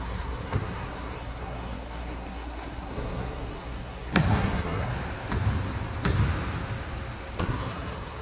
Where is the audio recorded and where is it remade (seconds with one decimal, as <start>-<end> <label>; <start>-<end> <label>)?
0.0-4.9 remade; 4.9-7.4 recorded; 7.4-8.2 remade